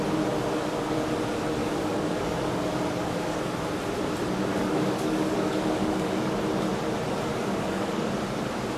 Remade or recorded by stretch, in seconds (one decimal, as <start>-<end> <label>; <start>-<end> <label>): 0.0-1.6 recorded; 1.6-3.5 remade; 3.5-4.5 recorded; 4.5-6.4 remade; 6.4-7.3 recorded; 7.3-8.1 remade; 8.1-8.8 recorded